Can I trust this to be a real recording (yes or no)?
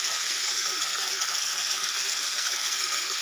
no